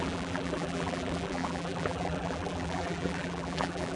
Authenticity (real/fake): fake